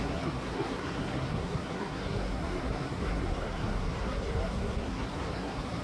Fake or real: fake